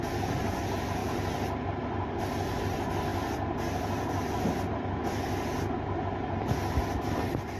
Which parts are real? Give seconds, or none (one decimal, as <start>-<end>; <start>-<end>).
0.0-1.0; 2.2-3.1; 5.0-7.6